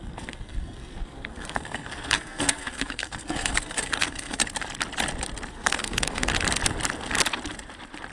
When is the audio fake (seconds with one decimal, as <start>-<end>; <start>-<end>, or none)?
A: 0.0-4.4; 5.5-6.3